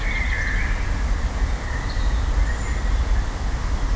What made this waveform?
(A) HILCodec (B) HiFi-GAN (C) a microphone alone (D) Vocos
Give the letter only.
C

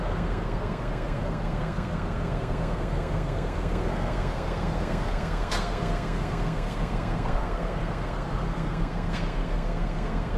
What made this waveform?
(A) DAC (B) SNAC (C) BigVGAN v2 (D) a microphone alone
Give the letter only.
B